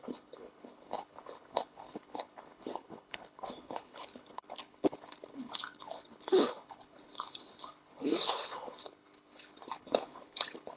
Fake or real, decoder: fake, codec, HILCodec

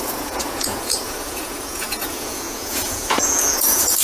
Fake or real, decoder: fake, vocoder, Vocos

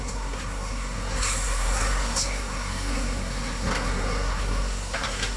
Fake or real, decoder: fake, codec, SNAC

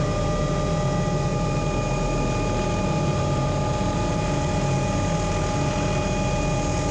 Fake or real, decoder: real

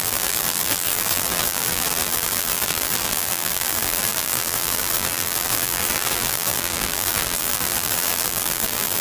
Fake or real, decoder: fake, vocoder, BigVGAN v2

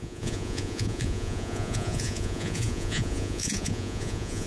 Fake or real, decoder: fake, vocoder, Vocos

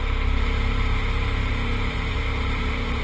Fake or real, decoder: fake, vocoder, BigVGAN v2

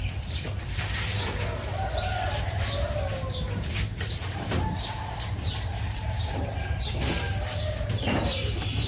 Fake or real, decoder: fake, vocoder, BigVGAN v2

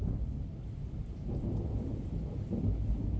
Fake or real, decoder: real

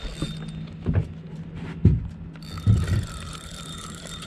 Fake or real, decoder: real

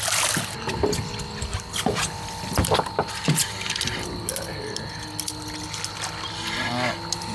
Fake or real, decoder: real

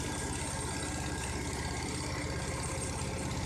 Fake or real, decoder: real